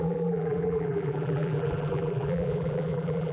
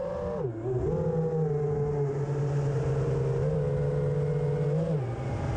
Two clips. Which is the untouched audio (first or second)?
second